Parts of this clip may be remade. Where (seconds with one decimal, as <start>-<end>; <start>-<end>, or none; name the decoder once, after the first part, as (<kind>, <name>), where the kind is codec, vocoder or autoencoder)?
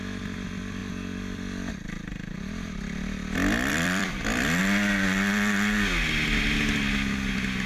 3.7-4.6 (vocoder, BigVGAN v2)